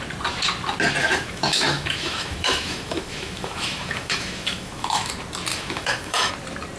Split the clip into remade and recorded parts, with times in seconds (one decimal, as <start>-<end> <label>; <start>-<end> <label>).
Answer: 0.0-1.0 recorded; 1.0-5.1 remade; 5.1-5.5 recorded; 5.5-6.3 remade; 6.3-6.8 recorded

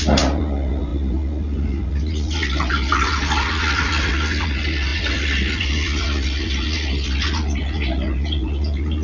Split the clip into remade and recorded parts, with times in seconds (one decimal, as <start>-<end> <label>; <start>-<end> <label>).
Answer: 0.0-9.0 remade

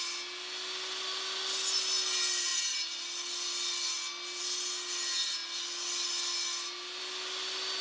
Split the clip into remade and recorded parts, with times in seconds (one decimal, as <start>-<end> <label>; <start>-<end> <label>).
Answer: 0.0-7.8 recorded

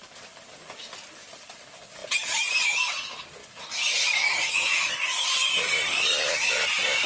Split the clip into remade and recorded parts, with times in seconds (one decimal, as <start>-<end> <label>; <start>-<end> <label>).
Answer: 0.0-1.6 remade; 1.6-2.0 recorded; 2.0-2.5 remade; 2.5-3.4 recorded; 3.4-6.5 remade; 6.5-7.1 recorded